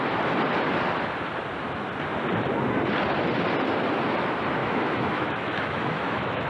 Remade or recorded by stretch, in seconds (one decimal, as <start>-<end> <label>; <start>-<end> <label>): 0.0-4.6 recorded; 4.6-6.5 remade